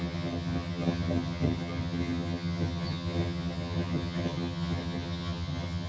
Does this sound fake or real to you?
fake